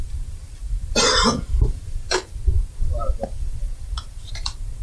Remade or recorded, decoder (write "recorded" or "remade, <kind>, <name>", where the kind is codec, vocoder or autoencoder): remade, vocoder, BigVGAN v2